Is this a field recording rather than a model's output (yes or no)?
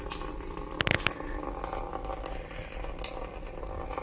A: yes